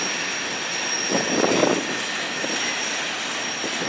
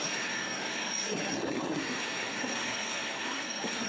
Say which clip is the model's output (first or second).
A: second